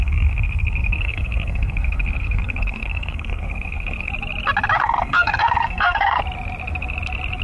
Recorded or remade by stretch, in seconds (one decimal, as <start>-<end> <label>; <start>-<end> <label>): 0.0-4.1 remade; 4.1-4.8 recorded; 4.8-6.2 remade; 6.2-7.4 recorded